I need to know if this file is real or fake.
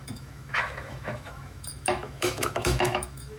fake